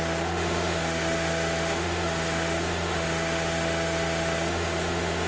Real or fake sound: fake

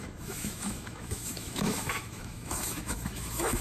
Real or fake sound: fake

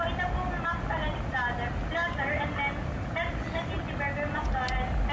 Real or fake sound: real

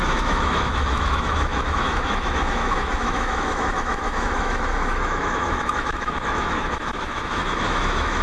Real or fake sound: fake